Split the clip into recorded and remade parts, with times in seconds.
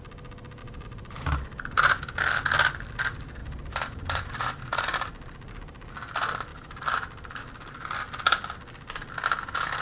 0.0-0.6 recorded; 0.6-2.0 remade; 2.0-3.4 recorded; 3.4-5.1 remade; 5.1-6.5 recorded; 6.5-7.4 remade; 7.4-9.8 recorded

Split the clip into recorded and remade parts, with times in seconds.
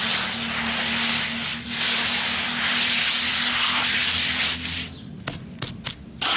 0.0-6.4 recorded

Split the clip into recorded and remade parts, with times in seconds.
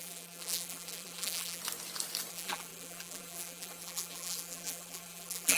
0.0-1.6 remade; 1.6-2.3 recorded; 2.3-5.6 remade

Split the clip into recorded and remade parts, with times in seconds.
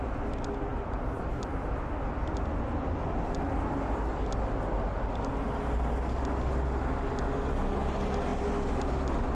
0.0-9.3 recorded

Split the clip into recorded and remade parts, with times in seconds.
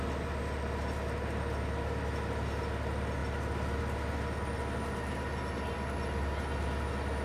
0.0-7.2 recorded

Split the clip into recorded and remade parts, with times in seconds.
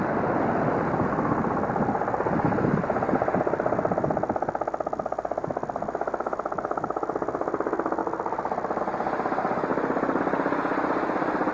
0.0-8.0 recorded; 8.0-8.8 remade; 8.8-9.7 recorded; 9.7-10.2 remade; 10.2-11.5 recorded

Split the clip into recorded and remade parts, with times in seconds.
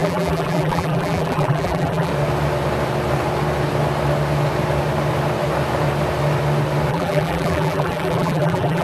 0.0-2.1 remade; 2.1-6.9 recorded; 6.9-8.8 remade